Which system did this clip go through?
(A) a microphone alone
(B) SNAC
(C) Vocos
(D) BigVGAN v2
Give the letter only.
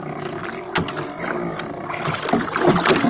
A